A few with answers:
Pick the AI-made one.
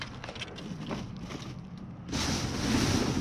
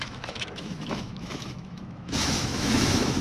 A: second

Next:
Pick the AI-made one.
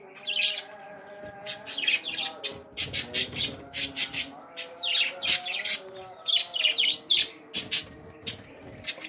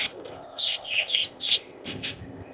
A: second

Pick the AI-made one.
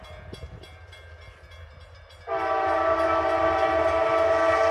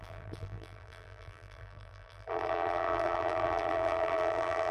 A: second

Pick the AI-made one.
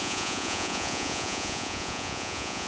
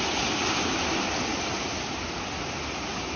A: first